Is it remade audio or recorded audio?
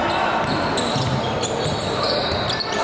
recorded